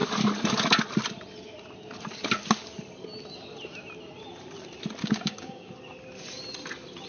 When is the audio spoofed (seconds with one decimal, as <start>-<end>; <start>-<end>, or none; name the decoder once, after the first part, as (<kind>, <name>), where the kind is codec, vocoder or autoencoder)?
5.0-5.7 (codec, DAC)